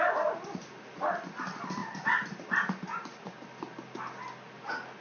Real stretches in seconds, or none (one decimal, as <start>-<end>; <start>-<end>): 0.0-5.0